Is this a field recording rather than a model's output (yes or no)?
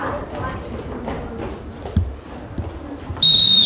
yes